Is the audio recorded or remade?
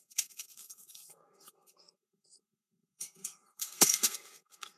remade